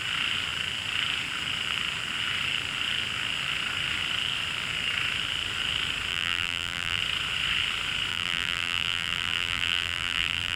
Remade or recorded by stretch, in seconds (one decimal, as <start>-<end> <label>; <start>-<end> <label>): 0.0-6.1 recorded; 6.1-7.0 remade; 7.0-8.1 recorded; 8.1-10.6 remade